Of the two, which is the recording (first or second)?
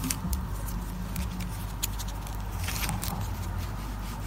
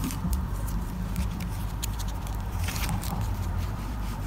first